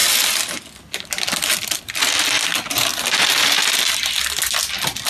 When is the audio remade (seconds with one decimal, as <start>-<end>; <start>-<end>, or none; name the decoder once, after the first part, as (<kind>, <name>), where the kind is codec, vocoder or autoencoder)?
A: 2.9-3.7 (vocoder, BigVGAN v2)